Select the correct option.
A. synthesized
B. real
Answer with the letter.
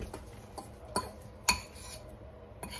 B